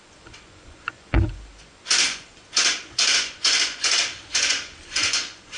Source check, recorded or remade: remade